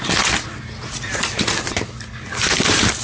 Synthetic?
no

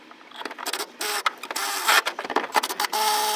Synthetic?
no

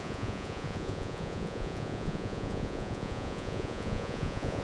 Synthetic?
yes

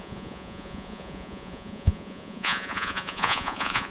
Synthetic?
yes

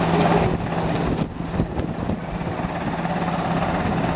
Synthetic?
no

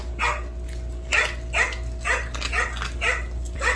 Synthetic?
no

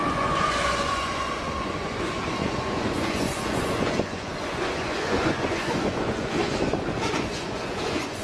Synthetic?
yes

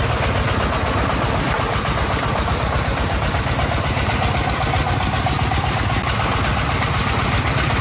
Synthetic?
no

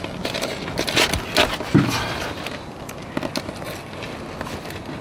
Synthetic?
no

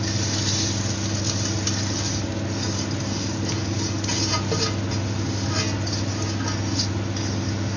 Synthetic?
no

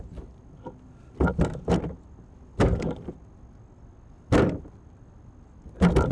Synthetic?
no